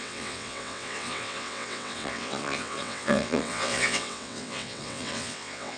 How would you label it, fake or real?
fake